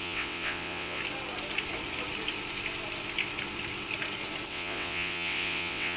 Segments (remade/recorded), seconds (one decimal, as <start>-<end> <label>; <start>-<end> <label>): 0.0-1.0 remade; 1.0-4.5 recorded; 4.5-6.0 remade